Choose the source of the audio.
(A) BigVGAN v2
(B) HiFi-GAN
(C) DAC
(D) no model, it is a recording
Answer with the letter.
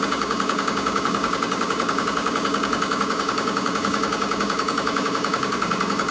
C